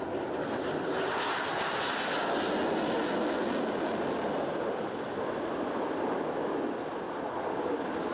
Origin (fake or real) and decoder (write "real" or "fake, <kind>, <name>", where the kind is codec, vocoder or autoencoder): real